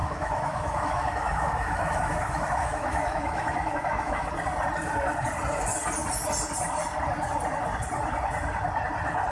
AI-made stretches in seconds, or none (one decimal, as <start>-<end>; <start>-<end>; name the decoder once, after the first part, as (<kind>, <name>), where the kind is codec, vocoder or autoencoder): 0.0-4.3 (autoencoder, DAC-VAE)